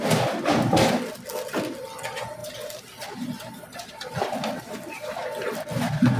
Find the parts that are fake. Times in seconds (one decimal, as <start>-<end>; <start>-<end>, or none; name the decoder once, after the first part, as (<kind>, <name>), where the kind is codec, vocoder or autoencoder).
none